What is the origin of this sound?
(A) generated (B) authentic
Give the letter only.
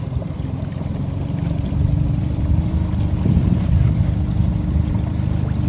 A